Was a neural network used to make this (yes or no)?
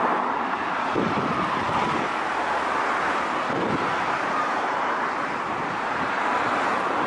no